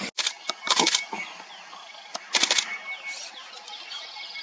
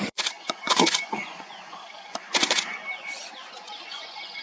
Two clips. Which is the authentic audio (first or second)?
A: first